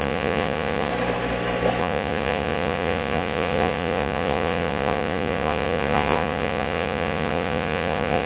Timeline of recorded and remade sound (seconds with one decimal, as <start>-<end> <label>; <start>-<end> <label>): 0.0-0.9 remade; 0.9-1.8 recorded; 1.8-8.3 remade